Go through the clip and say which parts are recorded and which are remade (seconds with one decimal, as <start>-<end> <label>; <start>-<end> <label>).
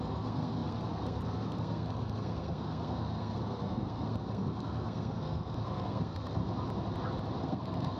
0.0-6.4 remade; 6.4-7.4 recorded; 7.4-8.0 remade